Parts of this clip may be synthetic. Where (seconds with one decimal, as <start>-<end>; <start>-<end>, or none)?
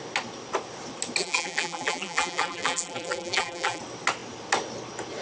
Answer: 1.2-3.8